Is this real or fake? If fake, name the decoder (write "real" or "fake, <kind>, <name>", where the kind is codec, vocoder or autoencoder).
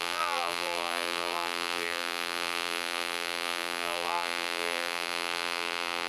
fake, vocoder, BigVGAN v2